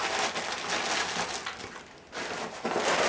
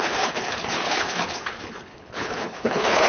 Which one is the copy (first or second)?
second